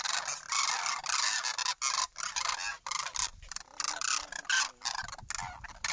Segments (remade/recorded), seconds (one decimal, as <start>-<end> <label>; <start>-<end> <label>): 0.0-5.9 recorded